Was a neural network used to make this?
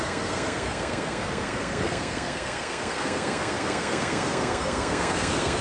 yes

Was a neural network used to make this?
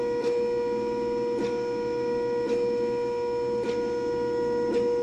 no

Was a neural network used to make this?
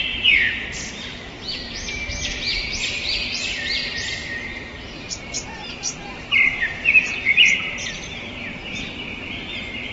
yes